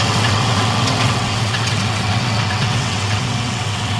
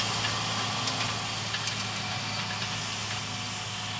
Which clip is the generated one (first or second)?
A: first